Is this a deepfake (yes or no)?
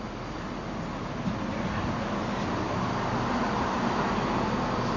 no